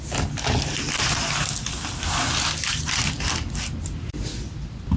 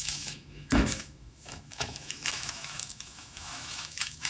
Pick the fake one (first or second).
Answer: second